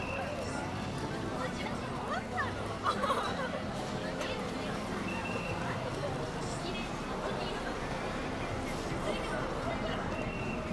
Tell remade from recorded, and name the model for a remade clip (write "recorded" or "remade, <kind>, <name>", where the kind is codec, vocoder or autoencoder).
recorded